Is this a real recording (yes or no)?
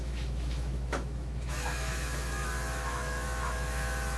no